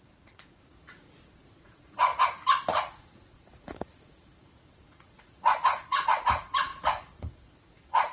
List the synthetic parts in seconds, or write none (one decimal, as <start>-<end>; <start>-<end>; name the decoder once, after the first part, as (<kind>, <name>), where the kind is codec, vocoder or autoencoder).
0.0-2.1 (vocoder, Vocos); 2.8-8.1